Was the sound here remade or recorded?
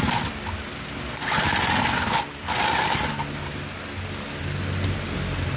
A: recorded